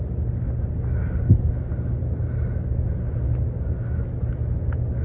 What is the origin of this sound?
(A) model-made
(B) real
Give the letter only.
B